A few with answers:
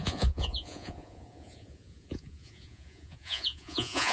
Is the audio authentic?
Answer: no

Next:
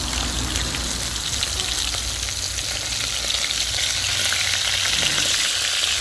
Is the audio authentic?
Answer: yes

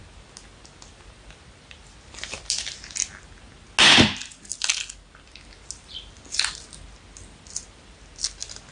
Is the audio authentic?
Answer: yes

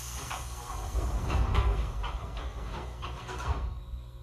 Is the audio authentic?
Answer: no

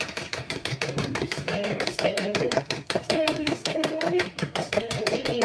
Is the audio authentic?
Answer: no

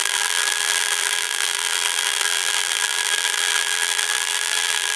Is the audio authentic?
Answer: no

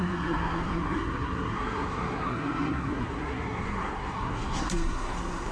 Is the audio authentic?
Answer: no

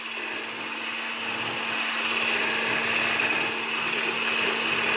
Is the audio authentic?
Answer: yes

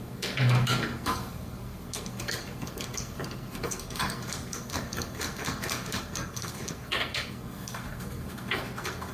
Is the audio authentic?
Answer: no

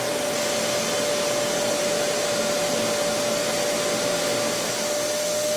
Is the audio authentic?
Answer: yes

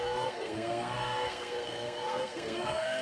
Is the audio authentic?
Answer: no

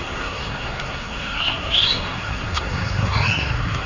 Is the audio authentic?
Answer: no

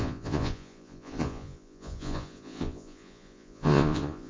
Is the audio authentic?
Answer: no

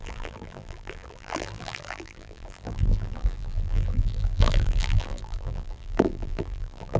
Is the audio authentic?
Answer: no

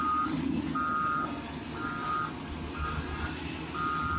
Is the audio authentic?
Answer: yes